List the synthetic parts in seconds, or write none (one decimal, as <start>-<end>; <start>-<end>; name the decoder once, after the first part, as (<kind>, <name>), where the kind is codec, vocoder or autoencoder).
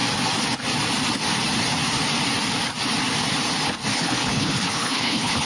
3.9-5.5 (codec, HILCodec)